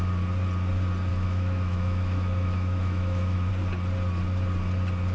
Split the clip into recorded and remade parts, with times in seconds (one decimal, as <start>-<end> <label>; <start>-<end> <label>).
0.0-1.1 recorded; 1.1-3.5 remade; 3.5-5.1 recorded